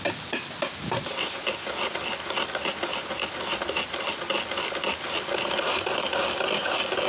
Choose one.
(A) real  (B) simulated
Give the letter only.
A